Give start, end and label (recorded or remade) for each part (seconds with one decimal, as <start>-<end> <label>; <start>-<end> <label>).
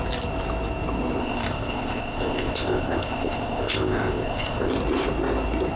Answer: 0.0-1.2 recorded; 1.2-4.7 remade; 4.7-5.8 recorded